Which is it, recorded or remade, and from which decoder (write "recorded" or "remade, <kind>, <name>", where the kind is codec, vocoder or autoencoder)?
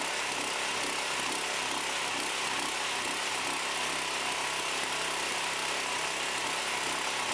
recorded